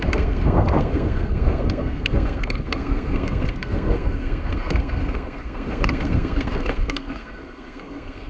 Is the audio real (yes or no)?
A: no